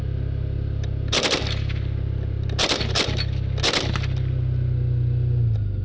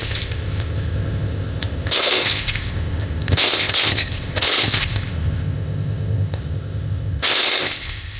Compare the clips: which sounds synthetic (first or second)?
second